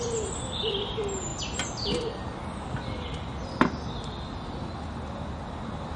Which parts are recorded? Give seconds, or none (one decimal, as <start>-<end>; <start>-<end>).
0.0-6.0